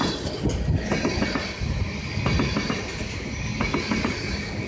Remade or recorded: recorded